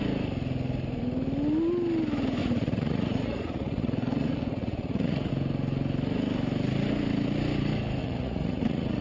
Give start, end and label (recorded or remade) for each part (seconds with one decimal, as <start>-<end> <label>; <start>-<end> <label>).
0.0-2.4 recorded; 2.4-5.3 remade; 5.3-8.0 recorded; 8.0-9.0 remade